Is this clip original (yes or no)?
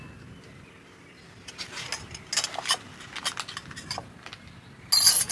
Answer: yes